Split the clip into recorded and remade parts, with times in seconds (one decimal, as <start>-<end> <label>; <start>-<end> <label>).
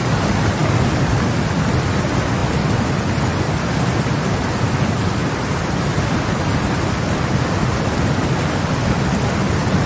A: 0.0-9.9 recorded